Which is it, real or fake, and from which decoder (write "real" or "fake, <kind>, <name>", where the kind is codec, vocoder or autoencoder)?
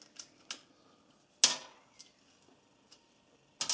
real